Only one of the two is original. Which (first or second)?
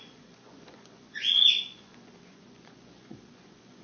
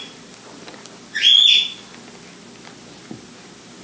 second